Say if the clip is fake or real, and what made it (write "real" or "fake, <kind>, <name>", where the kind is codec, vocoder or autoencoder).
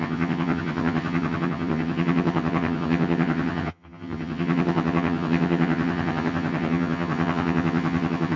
fake, vocoder, HiFi-GAN